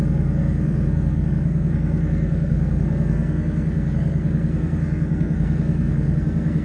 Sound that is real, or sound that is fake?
fake